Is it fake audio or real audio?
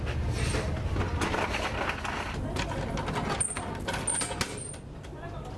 real